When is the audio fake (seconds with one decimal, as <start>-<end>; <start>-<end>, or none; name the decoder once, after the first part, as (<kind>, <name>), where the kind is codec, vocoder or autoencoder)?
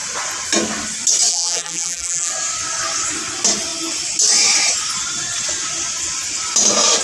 1.3-2.3 (vocoder, BigVGAN v2)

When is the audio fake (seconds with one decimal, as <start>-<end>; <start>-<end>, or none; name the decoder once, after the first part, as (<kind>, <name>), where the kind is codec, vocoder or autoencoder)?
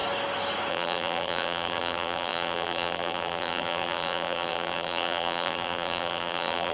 0.7-6.7 (vocoder, BigVGAN v2)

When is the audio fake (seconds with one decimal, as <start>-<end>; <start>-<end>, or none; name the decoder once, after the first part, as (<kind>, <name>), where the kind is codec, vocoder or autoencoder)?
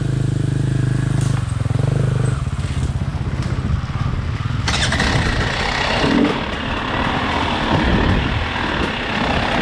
none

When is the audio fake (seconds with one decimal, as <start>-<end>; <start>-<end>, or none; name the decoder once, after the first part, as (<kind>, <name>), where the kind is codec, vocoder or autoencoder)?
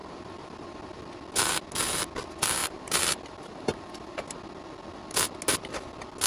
0.0-1.0 (vocoder, BigVGAN v2); 2.6-3.9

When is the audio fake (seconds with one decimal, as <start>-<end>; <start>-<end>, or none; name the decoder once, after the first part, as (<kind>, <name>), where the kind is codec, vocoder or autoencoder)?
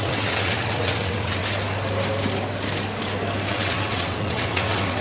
0.0-1.4 (vocoder, WaveNeXt); 3.5-5.0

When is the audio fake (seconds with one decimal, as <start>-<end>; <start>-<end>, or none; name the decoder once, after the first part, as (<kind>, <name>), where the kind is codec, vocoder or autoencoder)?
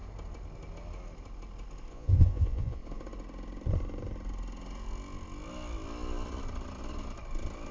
1.9-2.8 (vocoder, Vocos)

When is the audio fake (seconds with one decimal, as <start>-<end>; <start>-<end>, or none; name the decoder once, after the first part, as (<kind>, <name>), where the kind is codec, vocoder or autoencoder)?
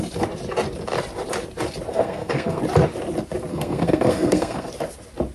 1.9-2.6 (codec, SNAC); 3.5-4.7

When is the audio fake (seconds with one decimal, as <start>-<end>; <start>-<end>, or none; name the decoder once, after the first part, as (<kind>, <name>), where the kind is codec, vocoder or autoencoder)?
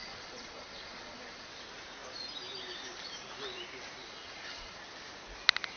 0.0-1.5 (vocoder, Vocos); 4.0-4.8